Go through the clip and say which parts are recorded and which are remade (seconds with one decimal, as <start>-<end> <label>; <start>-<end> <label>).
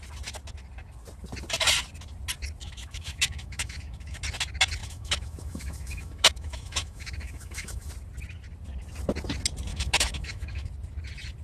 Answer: 0.0-2.6 recorded; 2.6-4.2 remade; 4.2-4.8 recorded; 4.8-7.9 remade; 7.9-9.7 recorded; 9.7-10.7 remade; 10.7-11.4 recorded